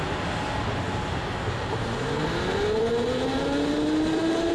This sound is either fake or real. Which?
real